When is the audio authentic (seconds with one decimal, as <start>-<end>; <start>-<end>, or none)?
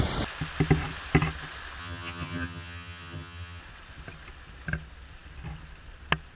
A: 0.0-1.8; 3.6-6.4